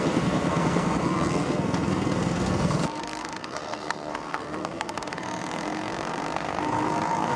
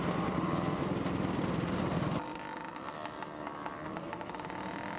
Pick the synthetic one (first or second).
first